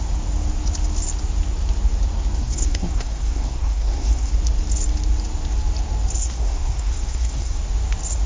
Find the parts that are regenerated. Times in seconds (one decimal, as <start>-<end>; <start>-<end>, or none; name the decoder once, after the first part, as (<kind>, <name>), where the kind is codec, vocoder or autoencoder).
2.4-4.3 (codec, SNAC); 6.2-7.6